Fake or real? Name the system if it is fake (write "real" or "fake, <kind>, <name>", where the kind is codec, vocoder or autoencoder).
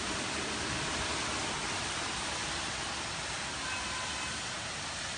real